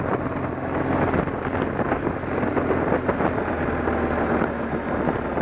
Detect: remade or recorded recorded